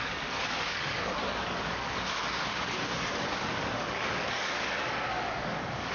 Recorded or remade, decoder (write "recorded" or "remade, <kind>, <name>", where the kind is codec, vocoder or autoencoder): remade, codec, DAC